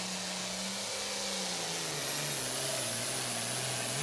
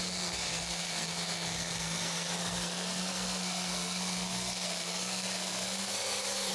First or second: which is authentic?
first